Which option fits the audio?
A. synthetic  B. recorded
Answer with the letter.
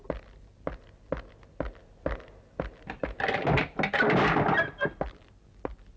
B